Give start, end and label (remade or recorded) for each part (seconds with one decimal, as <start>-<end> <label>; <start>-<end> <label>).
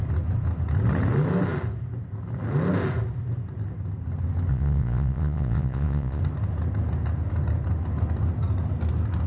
0.0-4.5 recorded; 4.5-6.2 remade; 6.2-9.3 recorded